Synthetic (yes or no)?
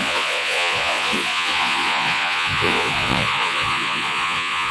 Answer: yes